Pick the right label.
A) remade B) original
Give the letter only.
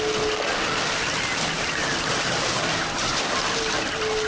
B